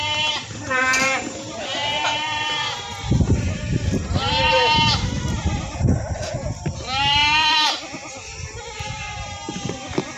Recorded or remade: remade